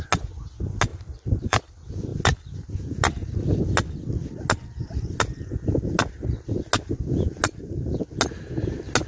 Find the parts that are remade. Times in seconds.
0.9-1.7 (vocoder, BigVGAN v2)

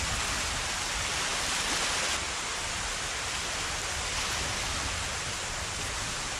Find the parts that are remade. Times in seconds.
none

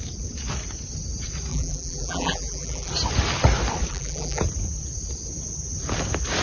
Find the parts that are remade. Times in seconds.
1.5-2.9 (vocoder, BigVGAN v2); 3.9-4.4

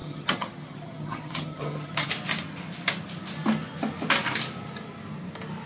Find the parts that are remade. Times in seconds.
0.0-2.1 (vocoder, HiFi-GAN)

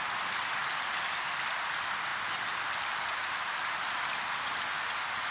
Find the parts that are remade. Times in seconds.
none